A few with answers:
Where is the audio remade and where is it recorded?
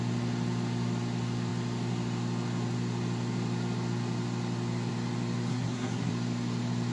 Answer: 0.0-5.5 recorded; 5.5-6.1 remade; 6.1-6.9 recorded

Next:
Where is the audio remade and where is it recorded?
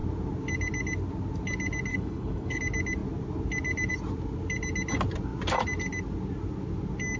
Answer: 0.0-1.9 recorded; 1.9-2.6 remade; 2.6-7.2 recorded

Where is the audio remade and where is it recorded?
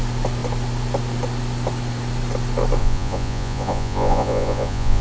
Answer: 0.0-2.8 recorded; 2.8-5.0 remade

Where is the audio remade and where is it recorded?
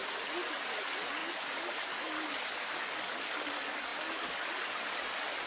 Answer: 0.0-0.5 recorded; 0.5-5.5 remade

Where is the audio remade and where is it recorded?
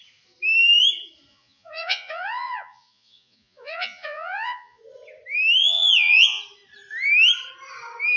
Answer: 0.0-1.3 recorded; 1.3-4.8 remade; 4.8-5.6 recorded; 5.6-6.4 remade; 6.4-8.2 recorded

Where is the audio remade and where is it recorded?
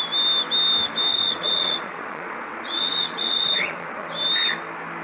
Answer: 0.0-1.1 recorded; 1.1-4.1 remade; 4.1-5.0 recorded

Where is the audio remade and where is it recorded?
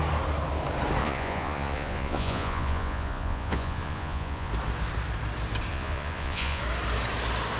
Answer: 0.0-1.0 recorded; 1.0-4.5 remade; 4.5-5.7 recorded; 5.7-6.6 remade; 6.6-7.6 recorded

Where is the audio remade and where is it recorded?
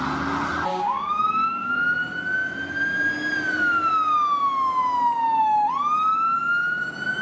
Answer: 0.0-0.7 recorded; 0.7-1.7 remade; 1.7-7.2 recorded